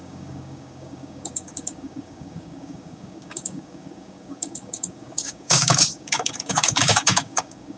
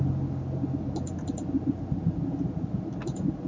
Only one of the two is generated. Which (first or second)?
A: first